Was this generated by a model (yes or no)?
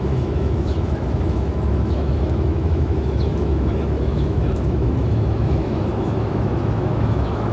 yes